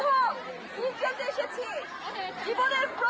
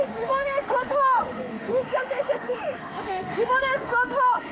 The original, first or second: first